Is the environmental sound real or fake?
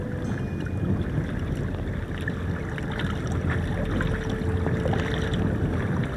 real